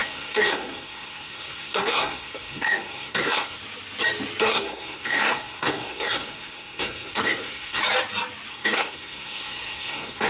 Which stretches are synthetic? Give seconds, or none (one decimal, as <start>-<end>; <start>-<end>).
0.0-3.6; 4.4-7.8; 8.5-10.3